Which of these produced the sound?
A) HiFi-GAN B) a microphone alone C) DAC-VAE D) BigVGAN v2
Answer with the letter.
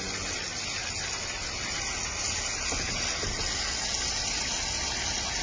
B